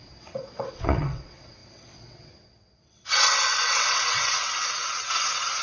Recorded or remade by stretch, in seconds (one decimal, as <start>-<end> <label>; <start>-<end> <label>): 0.0-5.6 remade